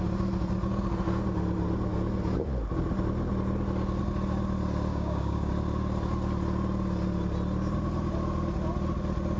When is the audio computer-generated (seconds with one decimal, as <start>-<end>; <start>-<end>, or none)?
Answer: 4.9-5.5